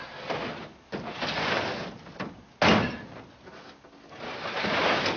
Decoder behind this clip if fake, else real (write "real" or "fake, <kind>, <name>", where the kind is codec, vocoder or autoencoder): real